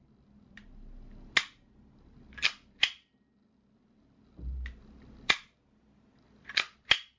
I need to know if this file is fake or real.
real